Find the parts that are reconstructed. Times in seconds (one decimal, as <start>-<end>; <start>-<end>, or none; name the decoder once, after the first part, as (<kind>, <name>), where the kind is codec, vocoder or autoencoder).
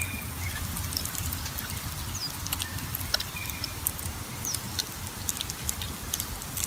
none